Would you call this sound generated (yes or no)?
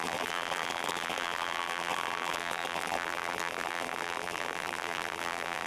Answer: yes